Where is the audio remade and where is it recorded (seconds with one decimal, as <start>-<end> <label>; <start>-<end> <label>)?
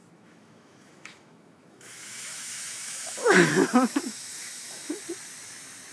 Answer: 0.0-3.5 remade; 3.5-4.1 recorded; 4.1-5.0 remade; 5.0-5.9 recorded